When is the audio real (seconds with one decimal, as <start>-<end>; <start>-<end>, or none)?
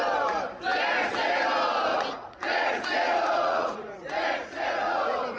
0.0-1.9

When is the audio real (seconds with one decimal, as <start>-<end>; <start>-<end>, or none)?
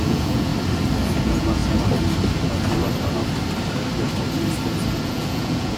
0.5-1.2; 1.6-5.1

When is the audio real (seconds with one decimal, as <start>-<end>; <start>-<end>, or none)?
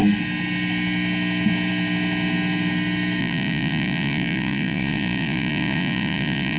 0.0-3.2